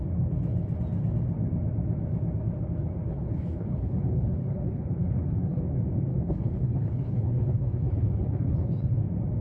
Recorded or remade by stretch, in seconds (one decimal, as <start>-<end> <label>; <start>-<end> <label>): 0.0-3.1 recorded; 3.1-5.6 remade; 5.6-6.1 recorded; 6.1-9.0 remade; 9.0-9.4 recorded